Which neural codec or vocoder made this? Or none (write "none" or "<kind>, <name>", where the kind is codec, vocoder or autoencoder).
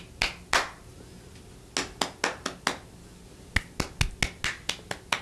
none